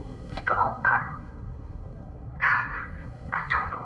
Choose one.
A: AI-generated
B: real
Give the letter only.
A